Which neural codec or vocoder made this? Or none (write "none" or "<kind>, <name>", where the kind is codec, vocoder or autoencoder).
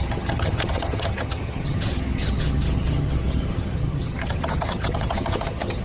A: vocoder, HiFi-GAN